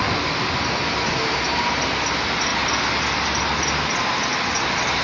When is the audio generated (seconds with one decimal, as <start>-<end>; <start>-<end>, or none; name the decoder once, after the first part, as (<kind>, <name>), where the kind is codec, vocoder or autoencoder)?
none